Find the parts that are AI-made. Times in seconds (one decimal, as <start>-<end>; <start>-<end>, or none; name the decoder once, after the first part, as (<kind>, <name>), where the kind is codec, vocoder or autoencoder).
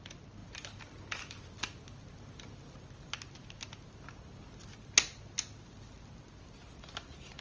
none